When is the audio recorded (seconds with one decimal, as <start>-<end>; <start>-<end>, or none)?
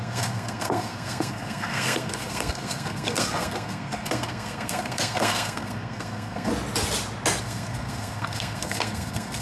6.5-7.4